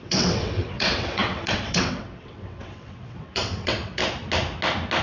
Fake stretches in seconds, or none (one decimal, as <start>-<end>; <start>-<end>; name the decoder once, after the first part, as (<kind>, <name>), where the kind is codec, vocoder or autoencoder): 0.0-4.0 (vocoder, WaveNeXt)